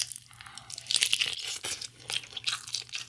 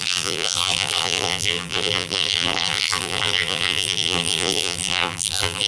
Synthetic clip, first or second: second